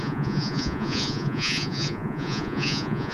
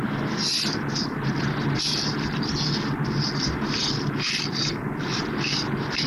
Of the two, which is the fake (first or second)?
first